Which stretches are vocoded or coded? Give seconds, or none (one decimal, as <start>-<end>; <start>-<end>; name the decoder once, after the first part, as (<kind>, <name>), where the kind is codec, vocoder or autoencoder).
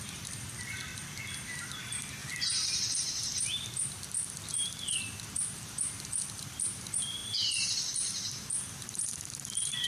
0.0-0.9 (vocoder, BigVGAN v2); 1.4-2.2; 2.9-9.9